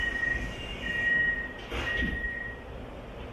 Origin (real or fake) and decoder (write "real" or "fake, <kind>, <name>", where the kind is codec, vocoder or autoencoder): real